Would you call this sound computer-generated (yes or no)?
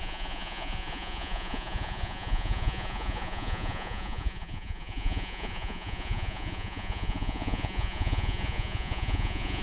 yes